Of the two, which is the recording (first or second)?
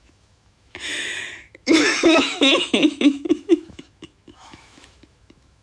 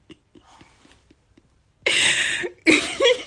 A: second